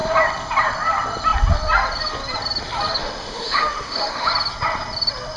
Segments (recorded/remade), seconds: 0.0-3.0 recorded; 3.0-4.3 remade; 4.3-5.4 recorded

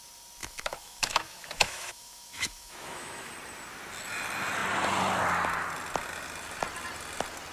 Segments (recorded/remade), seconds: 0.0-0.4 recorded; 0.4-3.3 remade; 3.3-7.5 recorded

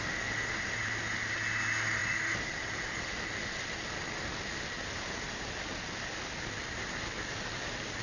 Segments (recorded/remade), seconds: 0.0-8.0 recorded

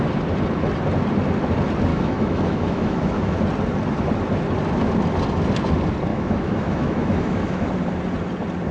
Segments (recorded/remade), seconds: 0.0-1.9 recorded; 1.9-3.4 remade; 3.4-6.1 recorded; 6.1-7.7 remade; 7.7-8.7 recorded